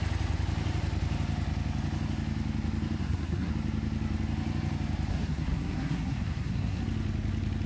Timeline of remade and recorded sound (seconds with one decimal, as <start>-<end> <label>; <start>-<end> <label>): 0.0-3.0 recorded; 3.0-3.5 remade; 3.5-5.1 recorded; 5.1-6.8 remade; 6.8-7.7 recorded